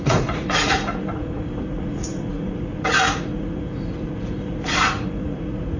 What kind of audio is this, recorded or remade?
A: remade